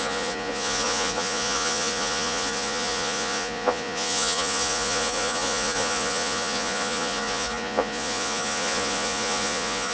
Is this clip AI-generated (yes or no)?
yes